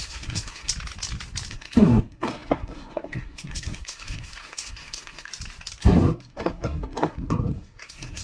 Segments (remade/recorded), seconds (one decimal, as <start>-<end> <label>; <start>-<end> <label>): 0.0-0.7 remade; 0.7-1.5 recorded; 1.5-5.3 remade; 5.3-5.8 recorded; 5.8-8.2 remade